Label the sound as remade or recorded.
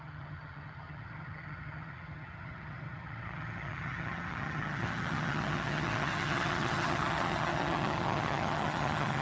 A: remade